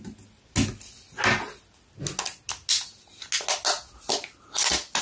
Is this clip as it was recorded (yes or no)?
yes